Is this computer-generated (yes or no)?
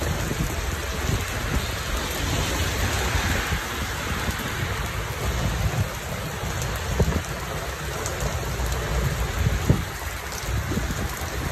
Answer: no